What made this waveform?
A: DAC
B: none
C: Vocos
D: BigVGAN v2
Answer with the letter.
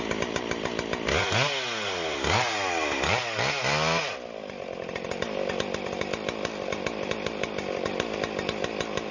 B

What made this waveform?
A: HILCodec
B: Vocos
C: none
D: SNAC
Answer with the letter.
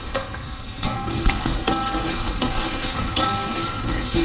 D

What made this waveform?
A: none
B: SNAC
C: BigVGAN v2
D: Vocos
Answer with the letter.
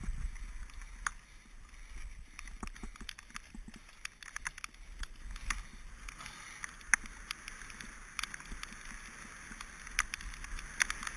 A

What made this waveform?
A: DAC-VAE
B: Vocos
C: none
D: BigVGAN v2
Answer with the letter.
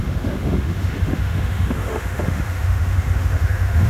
A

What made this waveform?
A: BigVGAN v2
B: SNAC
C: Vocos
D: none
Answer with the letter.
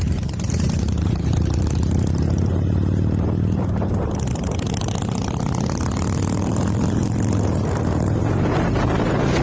A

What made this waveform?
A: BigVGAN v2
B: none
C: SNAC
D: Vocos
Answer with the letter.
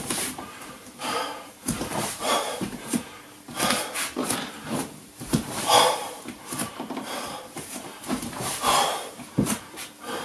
A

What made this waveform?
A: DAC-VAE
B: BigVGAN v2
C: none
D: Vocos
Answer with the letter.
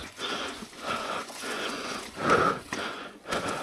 D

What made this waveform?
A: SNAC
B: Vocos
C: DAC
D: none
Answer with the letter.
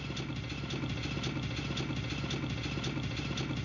D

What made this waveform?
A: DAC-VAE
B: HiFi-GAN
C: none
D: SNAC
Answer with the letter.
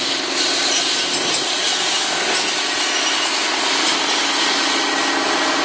C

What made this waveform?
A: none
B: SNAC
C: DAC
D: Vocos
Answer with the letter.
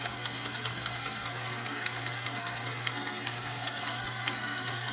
B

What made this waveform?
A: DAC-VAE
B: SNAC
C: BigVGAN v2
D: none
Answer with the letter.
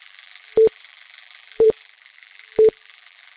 C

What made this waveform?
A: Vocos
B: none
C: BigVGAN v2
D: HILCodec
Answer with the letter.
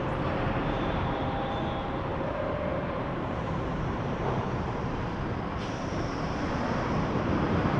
C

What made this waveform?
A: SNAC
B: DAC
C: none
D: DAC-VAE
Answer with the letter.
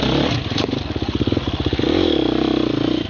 C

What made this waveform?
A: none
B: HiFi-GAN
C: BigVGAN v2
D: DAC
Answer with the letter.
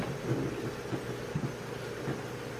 A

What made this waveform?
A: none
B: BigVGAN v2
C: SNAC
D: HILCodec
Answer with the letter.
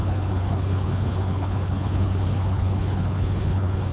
D